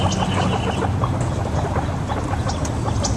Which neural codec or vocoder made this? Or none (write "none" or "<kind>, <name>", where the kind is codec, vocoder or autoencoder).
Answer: none